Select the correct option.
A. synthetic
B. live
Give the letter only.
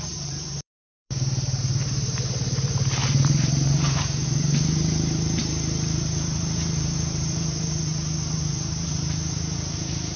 A